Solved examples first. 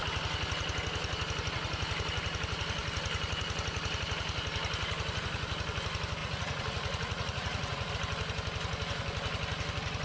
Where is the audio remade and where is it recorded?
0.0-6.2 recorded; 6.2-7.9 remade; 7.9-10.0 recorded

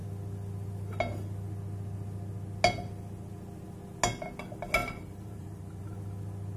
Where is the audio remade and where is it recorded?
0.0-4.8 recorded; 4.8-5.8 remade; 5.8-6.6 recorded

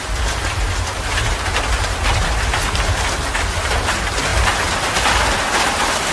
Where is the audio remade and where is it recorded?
0.0-6.1 recorded